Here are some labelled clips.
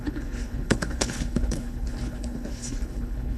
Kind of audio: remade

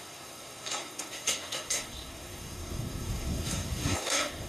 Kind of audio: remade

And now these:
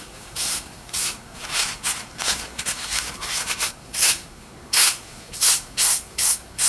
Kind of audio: remade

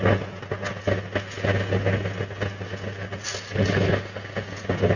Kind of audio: recorded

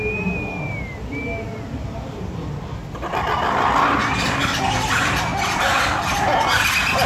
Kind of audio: recorded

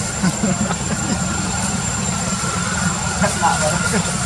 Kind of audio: remade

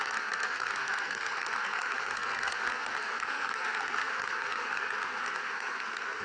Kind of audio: remade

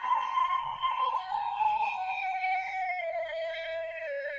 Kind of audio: remade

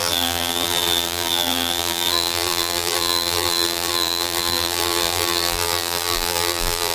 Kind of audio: remade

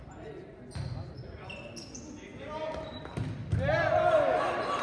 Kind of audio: recorded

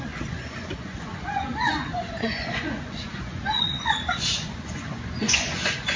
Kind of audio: remade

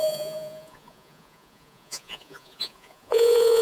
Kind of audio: remade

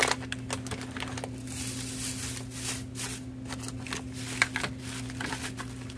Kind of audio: recorded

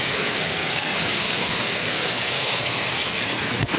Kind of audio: remade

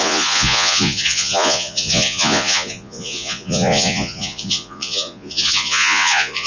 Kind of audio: remade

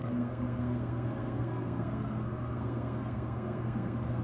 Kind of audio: remade